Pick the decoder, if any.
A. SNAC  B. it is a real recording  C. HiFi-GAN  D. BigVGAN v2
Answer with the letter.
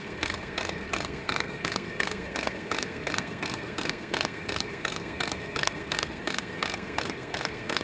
A